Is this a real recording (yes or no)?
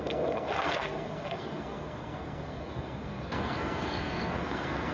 no